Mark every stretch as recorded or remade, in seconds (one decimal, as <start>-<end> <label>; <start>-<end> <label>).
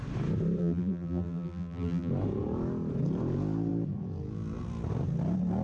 0.0-0.6 recorded; 0.6-2.1 remade; 2.1-5.6 recorded